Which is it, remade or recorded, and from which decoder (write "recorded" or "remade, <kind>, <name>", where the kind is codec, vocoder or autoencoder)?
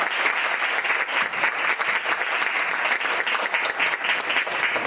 recorded